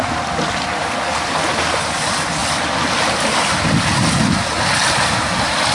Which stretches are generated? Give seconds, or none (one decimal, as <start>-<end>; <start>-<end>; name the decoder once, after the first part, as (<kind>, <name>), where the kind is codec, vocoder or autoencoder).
none